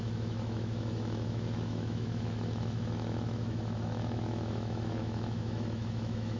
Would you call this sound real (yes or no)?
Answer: no